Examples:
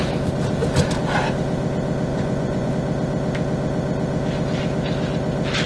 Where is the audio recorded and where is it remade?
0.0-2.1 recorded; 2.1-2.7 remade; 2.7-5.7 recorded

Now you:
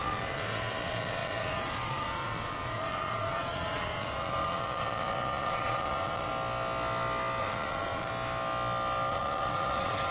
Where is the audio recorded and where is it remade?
0.0-6.3 remade; 6.3-7.4 recorded; 7.4-8.1 remade; 8.1-9.1 recorded; 9.1-10.1 remade

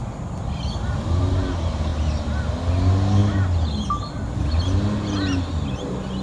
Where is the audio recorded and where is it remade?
0.0-1.2 remade; 1.2-1.9 recorded; 1.9-2.7 remade; 2.7-6.2 recorded

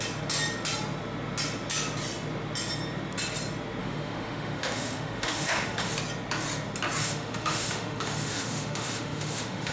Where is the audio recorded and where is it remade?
0.0-3.8 recorded; 3.8-5.9 remade; 5.9-7.0 recorded; 7.0-9.7 remade

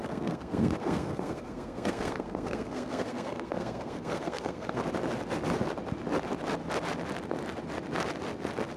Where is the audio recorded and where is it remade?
0.0-4.8 remade; 4.8-8.8 recorded

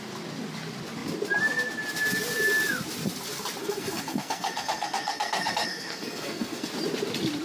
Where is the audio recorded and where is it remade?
0.0-3.6 recorded; 3.6-6.7 remade; 6.7-7.4 recorded

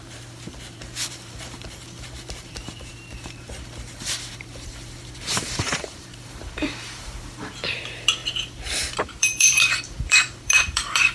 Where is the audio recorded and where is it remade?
0.0-11.1 remade